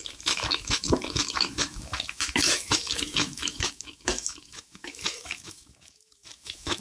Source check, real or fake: fake